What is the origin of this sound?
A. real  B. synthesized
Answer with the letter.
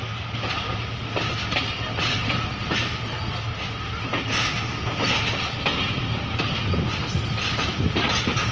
A